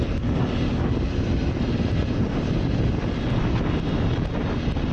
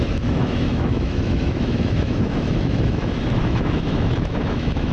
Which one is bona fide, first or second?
first